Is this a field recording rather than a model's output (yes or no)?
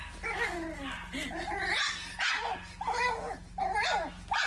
yes